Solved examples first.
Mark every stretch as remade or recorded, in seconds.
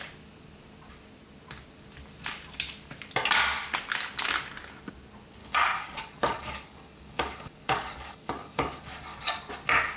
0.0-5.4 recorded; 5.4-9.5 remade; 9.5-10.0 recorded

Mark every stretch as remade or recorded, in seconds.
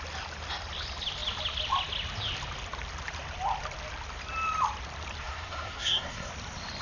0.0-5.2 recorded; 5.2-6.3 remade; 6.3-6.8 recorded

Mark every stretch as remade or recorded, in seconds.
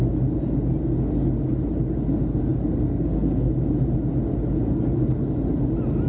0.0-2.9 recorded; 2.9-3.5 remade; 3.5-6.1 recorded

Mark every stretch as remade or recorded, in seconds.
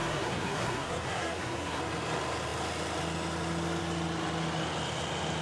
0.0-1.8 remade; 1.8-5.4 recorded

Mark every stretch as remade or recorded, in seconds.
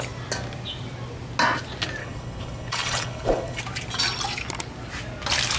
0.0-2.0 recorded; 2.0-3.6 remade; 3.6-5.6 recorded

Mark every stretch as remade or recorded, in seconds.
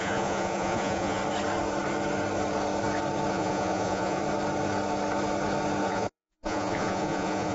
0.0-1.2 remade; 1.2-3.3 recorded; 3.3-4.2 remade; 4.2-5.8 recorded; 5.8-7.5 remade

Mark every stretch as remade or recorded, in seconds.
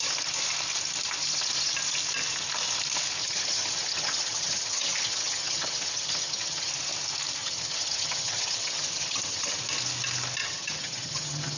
0.0-3.2 recorded; 3.2-6.7 remade; 6.7-7.4 recorded; 7.4-9.6 remade; 9.6-10.4 recorded; 10.4-11.6 remade